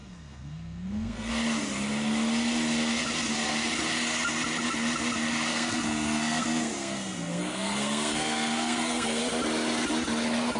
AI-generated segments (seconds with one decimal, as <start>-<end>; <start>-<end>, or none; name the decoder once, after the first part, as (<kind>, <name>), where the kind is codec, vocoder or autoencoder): 0.0-1.3 (codec, SNAC); 5.5-9.2

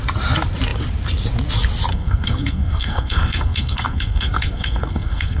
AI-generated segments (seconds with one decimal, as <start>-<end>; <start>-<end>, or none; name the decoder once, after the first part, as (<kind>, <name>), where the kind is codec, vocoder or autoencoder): 1.9-5.4 (codec, SNAC)

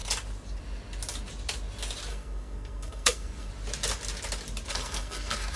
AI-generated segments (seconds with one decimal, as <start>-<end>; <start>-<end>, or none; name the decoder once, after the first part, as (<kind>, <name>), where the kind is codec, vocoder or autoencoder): 2.1-3.5 (codec, SNAC); 4.7-5.6

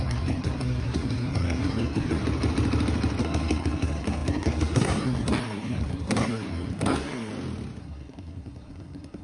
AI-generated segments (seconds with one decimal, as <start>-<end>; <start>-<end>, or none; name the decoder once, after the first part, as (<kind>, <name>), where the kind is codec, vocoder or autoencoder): 0.0-2.2 (codec, SNAC); 3.2-7.3; 7.8-9.2

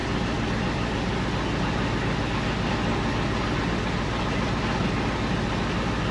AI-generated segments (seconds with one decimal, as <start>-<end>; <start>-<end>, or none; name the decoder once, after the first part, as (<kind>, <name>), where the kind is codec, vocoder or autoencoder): none